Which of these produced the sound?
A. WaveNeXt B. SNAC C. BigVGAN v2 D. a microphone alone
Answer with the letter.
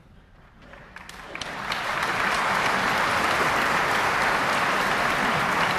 D